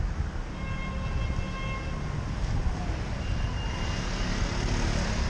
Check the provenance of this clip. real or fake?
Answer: real